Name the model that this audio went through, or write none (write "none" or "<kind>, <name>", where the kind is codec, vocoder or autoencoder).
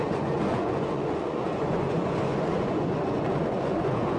vocoder, Vocos